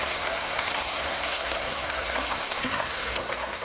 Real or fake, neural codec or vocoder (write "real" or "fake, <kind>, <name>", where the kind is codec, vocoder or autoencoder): fake, codec, SNAC